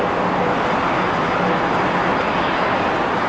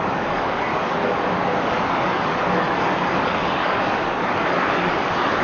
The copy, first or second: second